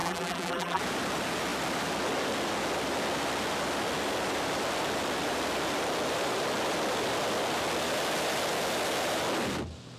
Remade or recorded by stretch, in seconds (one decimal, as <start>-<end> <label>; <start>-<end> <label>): 0.0-0.8 remade; 0.8-10.0 recorded